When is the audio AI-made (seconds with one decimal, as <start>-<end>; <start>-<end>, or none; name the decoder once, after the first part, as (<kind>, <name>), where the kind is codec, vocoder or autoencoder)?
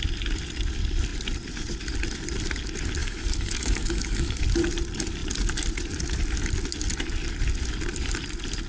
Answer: 3.0-4.4 (codec, DAC)